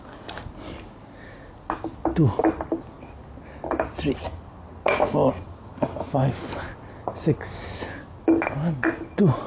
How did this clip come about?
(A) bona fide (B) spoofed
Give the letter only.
A